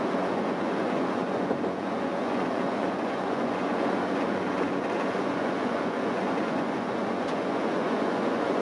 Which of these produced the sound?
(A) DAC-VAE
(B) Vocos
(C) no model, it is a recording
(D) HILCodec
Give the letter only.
B